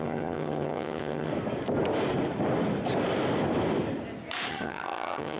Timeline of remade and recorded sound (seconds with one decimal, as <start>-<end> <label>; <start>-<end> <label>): 0.0-1.3 remade; 1.3-4.5 recorded; 4.5-5.4 remade